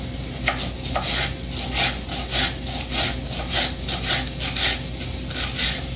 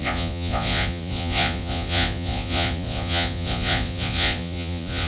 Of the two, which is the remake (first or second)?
second